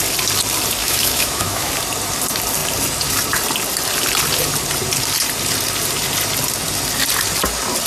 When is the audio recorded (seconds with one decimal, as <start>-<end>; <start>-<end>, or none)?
0.0-0.8; 1.7-7.9